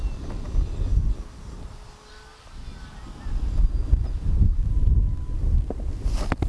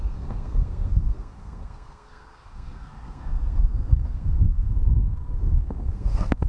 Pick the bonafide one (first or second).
first